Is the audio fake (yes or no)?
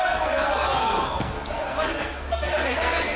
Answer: yes